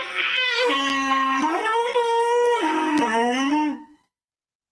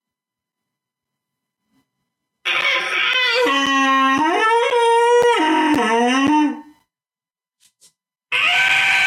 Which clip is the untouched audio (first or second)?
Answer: second